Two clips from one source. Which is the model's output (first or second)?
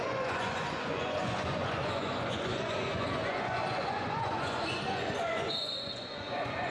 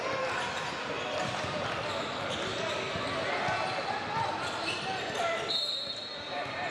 first